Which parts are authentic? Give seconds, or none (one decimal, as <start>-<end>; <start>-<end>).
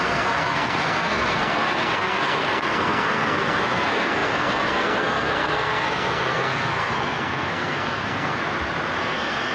8.4-9.0